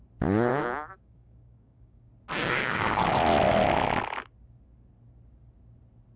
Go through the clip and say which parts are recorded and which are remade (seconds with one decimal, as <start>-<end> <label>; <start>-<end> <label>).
0.0-0.5 recorded; 0.5-2.1 remade; 2.1-2.6 recorded; 2.6-3.1 remade; 3.1-6.2 recorded